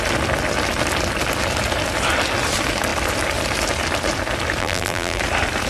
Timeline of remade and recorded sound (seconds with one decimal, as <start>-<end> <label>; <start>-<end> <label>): 0.0-4.6 recorded; 4.6-5.2 remade; 5.2-5.7 recorded